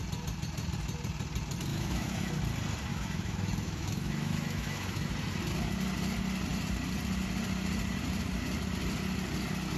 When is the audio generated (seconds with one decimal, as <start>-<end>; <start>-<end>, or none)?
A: 1.7-2.3; 2.9-5.1